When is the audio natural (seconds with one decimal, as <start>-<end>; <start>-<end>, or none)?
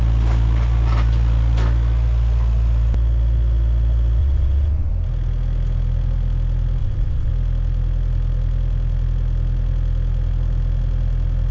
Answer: 0.0-4.2; 4.9-6.8; 7.3-11.5